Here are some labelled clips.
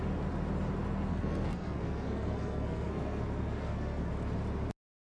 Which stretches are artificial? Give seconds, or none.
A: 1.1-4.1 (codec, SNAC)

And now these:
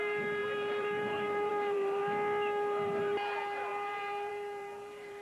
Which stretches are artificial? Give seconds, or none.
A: 0.0-2.0 (vocoder, BigVGAN v2); 3.0-5.2